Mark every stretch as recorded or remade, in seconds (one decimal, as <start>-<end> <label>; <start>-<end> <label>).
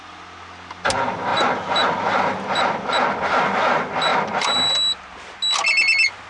0.0-6.3 recorded